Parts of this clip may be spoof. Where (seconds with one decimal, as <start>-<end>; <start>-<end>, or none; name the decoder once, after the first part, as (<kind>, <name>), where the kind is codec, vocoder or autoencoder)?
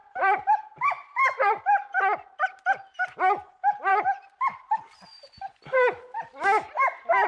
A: 0.0-1.6 (vocoder, BigVGAN v2)